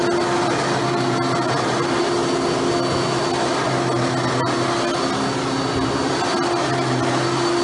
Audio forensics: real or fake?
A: real